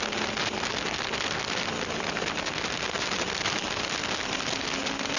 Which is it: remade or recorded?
recorded